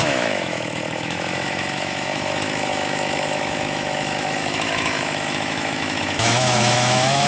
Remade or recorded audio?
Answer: remade